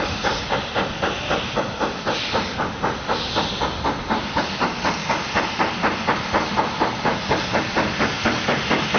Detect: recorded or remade recorded